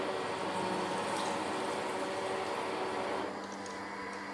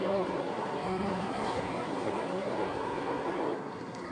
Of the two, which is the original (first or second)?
first